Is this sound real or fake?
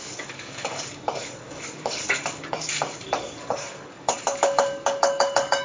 fake